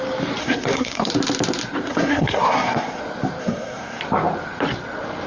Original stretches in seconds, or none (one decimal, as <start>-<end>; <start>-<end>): 0.0-0.4; 1.1-1.9; 3.0-3.4; 4.0-5.3